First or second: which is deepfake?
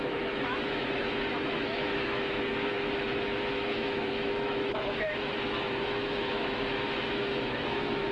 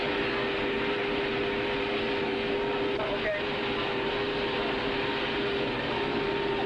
first